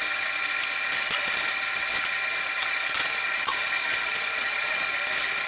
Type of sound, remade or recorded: recorded